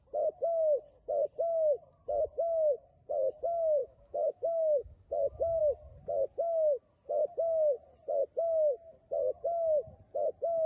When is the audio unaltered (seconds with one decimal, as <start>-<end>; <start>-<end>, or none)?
0.0-3.8; 5.6-10.7